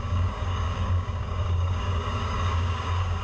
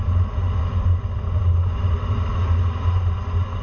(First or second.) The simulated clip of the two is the first